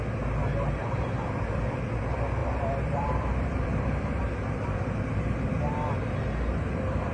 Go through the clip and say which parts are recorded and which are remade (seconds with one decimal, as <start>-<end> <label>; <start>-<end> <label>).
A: 0.0-0.8 recorded; 0.8-1.6 remade; 1.6-2.4 recorded; 2.4-5.6 remade; 5.6-7.1 recorded

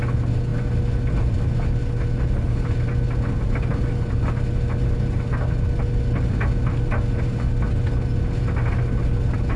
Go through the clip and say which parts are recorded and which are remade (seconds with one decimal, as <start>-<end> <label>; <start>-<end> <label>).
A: 0.0-9.6 recorded